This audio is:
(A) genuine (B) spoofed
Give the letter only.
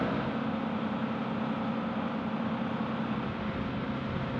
A